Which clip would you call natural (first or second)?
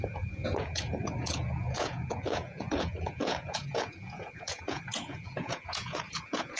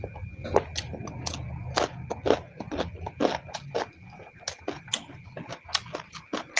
second